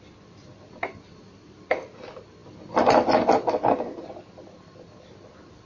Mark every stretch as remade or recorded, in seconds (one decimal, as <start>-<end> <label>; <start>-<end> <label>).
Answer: 0.0-5.7 recorded